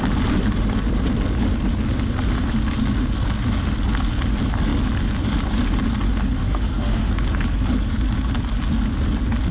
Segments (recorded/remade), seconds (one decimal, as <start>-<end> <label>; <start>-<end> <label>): 0.0-6.4 recorded; 6.4-7.1 remade; 7.1-9.5 recorded